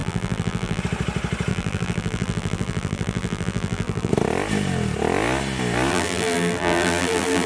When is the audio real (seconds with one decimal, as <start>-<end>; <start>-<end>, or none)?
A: 0.8-1.5; 4.1-5.9